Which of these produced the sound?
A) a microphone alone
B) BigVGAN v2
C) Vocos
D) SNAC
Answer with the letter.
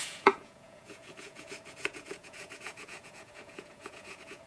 C